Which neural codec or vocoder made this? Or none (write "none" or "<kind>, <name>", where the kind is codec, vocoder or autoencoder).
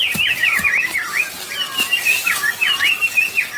none